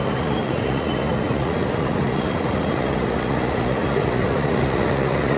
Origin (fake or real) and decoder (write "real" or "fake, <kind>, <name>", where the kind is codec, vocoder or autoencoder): fake, vocoder, Vocos